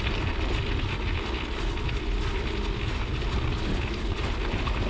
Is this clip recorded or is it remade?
recorded